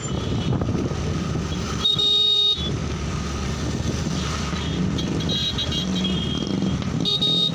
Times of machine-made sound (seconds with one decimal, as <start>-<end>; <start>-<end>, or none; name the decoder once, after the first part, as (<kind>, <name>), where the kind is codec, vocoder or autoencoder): none